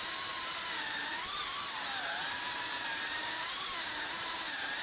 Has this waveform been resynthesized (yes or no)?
yes